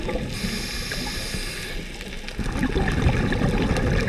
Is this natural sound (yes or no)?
yes